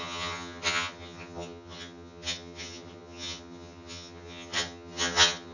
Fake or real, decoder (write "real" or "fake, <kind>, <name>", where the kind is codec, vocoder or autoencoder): fake, vocoder, HiFi-GAN